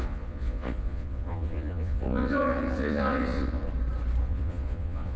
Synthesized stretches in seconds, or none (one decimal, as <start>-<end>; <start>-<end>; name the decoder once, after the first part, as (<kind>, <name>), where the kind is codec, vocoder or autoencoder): 0.0-3.7 (vocoder, Vocos); 4.2-5.2